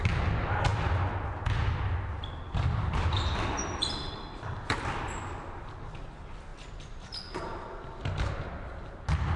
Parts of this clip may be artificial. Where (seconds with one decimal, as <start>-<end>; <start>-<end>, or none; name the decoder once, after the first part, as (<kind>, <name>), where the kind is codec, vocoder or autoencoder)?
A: none